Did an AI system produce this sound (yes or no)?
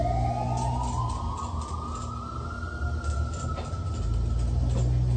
no